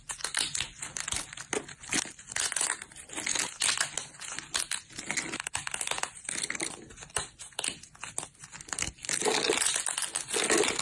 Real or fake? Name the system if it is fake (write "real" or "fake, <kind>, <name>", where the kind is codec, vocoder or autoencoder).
real